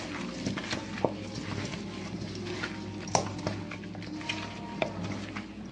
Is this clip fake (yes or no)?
no